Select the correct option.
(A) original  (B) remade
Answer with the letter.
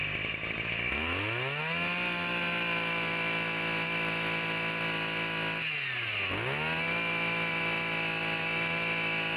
A